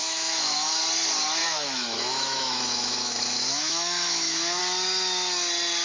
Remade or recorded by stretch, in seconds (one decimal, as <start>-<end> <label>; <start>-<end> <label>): 0.0-0.8 remade; 0.8-1.4 recorded; 1.4-4.6 remade; 4.6-5.8 recorded